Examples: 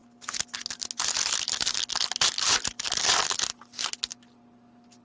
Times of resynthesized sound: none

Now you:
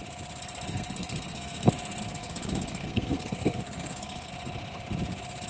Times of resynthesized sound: 0.7-1.7 (codec, SNAC); 2.2-4.3